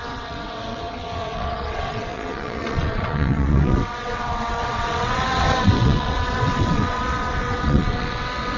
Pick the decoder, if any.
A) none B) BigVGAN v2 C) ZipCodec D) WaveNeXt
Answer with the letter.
D